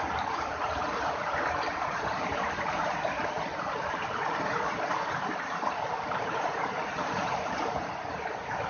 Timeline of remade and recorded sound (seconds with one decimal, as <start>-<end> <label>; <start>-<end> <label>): 0.0-8.7 remade